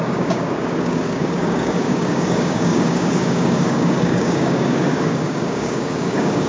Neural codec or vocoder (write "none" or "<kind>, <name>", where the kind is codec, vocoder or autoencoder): codec, DAC